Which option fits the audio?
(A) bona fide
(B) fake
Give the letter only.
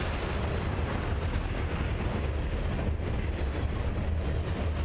A